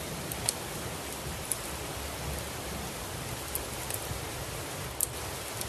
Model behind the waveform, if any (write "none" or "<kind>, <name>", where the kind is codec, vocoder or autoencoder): none